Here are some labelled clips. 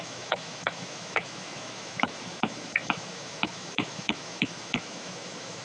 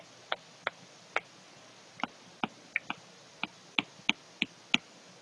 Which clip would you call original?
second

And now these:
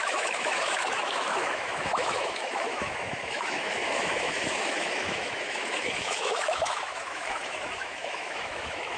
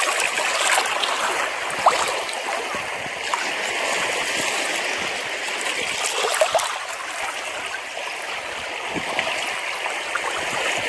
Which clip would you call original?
second